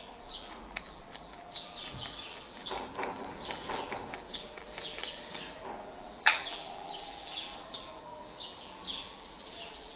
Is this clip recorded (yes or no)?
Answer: no